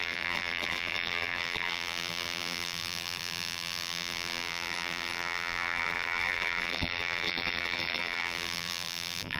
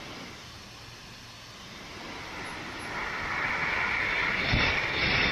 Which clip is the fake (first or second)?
first